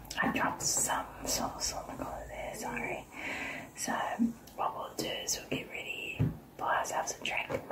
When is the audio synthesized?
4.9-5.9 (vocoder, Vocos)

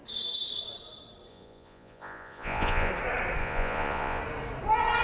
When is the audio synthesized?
1.3-2.9 (vocoder, Vocos); 3.4-4.2

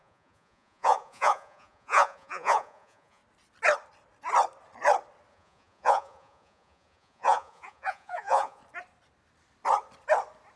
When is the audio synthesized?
0.0-3.2 (vocoder, Vocos); 5.3-8.6

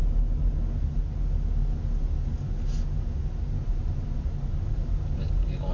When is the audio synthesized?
none